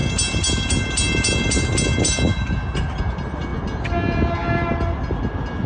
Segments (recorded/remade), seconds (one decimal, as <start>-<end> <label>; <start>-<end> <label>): 0.0-5.7 recorded